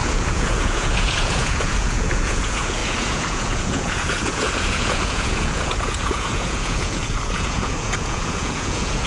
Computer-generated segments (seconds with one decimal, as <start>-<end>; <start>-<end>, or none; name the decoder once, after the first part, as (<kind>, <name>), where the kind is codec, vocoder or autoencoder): 0.0-9.1 (vocoder, Vocos)